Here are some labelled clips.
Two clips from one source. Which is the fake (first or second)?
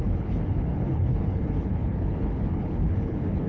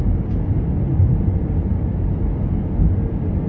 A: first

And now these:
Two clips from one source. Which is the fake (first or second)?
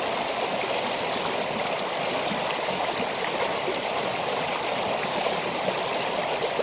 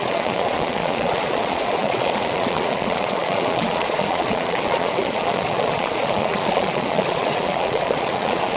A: second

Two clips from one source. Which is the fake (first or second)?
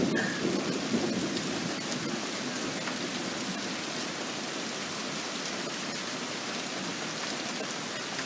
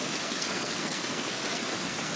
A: second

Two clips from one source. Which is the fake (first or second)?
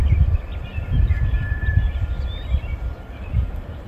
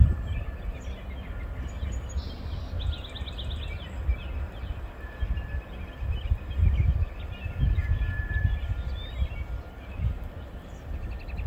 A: first